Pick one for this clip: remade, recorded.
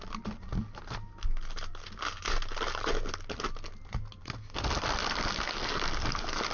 recorded